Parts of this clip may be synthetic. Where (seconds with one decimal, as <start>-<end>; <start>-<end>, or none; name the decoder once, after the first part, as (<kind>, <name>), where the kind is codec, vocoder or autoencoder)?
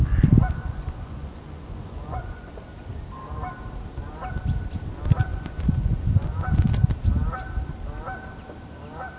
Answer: 0.6-2.5 (vocoder, Vocos); 5.3-6.1